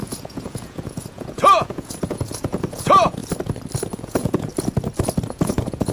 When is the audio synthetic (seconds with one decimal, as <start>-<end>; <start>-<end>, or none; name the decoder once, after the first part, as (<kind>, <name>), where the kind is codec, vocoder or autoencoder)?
0.0-3.2 (vocoder, Vocos); 4.0-4.5; 5.3-5.9

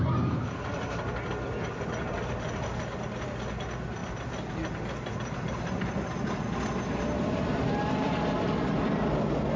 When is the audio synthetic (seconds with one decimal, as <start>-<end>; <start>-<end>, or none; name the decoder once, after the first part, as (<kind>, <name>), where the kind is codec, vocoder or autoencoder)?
none

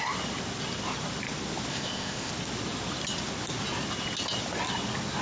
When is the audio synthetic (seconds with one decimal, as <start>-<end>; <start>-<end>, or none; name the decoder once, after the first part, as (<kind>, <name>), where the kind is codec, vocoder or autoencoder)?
1.7-2.3 (codec, ZipCodec)

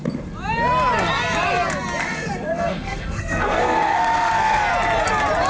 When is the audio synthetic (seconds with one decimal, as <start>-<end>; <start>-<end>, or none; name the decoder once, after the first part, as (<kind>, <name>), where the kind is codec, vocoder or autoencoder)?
2.0-4.6 (codec, SNAC)

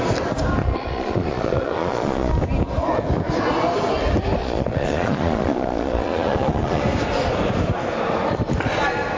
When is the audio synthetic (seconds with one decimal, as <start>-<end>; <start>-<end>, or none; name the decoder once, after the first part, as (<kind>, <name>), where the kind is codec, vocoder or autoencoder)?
0.6-2.3 (vocoder, Vocos); 4.4-6.8

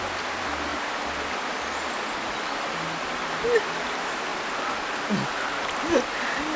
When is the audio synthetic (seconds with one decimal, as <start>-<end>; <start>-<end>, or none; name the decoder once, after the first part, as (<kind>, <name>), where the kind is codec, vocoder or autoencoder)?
none

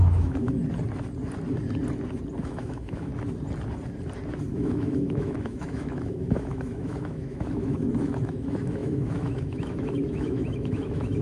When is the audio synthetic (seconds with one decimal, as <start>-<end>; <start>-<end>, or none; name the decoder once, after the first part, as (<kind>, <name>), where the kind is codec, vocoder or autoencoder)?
0.0-0.6 (autoencoder, DAC-VAE); 2.4-3.1; 4.5-11.2